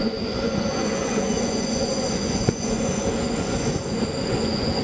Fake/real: fake